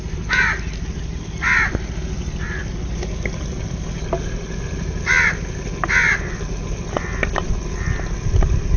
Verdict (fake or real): real